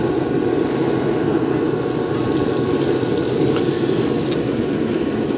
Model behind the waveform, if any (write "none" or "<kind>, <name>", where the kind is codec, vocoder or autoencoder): none